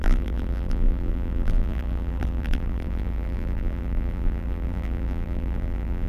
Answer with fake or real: fake